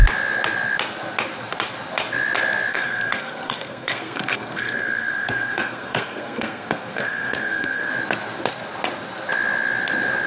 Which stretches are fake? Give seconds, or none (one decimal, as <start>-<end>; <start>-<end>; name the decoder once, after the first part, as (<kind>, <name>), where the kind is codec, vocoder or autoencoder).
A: 2.7-7.9 (codec, SNAC)